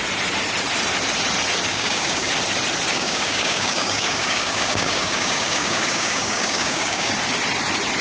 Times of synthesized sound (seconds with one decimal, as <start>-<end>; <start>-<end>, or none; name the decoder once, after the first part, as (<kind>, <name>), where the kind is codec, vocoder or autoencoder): 1.7-2.3 (codec, DAC); 2.9-7.1